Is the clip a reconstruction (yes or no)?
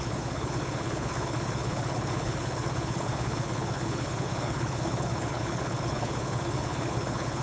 yes